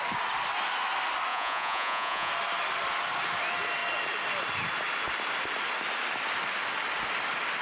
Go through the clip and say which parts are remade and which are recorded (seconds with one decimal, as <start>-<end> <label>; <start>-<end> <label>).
0.0-1.3 recorded; 1.3-2.3 remade; 2.3-7.6 recorded